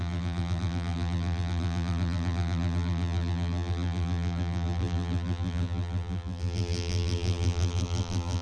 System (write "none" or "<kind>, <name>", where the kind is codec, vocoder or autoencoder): vocoder, BigVGAN v2